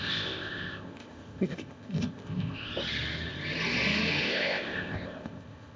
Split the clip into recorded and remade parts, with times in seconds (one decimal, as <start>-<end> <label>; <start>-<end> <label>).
0.0-2.7 remade; 2.7-4.2 recorded; 4.2-5.8 remade